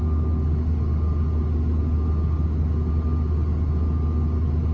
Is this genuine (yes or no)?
yes